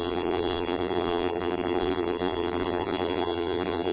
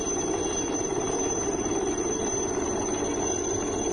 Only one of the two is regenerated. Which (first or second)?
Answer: first